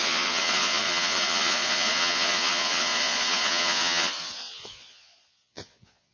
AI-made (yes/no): yes